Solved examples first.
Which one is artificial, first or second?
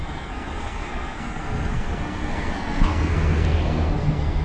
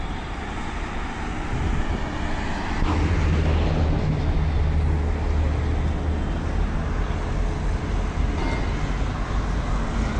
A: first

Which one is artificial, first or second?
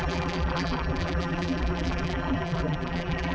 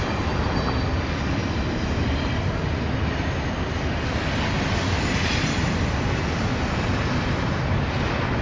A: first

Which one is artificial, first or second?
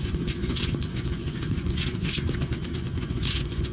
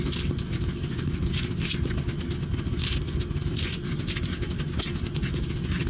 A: first